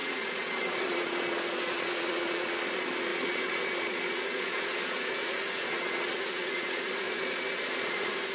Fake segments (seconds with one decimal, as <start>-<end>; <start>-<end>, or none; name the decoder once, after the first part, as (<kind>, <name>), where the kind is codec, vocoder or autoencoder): 0.0-8.3 (vocoder, Vocos)

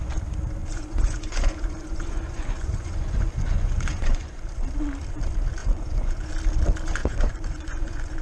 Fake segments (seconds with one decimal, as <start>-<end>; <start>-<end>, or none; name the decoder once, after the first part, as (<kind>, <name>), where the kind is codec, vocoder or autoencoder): 0.6-4.4 (vocoder, Vocos); 5.6-6.3; 7.0-8.2

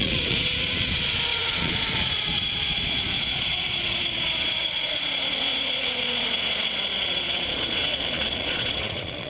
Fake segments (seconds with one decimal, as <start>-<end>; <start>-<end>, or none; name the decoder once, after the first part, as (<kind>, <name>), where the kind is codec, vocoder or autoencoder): 0.0-9.3 (vocoder, Vocos)